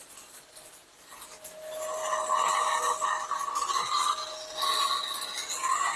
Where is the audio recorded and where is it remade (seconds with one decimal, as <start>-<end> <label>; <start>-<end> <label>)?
0.0-6.0 recorded